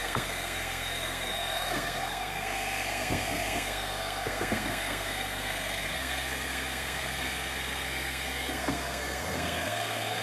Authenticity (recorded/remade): remade